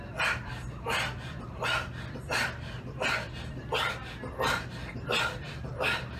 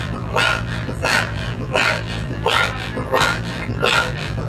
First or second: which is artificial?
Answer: second